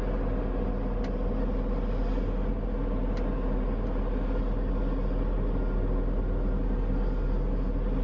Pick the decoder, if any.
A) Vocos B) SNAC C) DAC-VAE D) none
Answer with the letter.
D